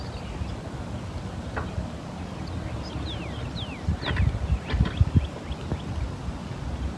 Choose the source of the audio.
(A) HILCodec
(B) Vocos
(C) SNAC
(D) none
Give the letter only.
D